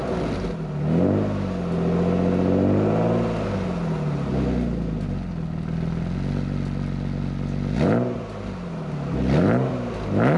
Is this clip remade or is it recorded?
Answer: recorded